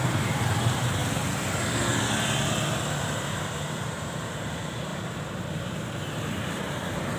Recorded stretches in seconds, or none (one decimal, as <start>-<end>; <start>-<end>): 1.0-3.0; 4.9-6.1